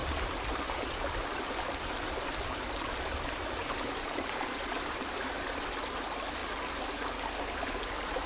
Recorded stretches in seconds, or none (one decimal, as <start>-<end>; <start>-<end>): 0.0-3.6; 4.9-8.3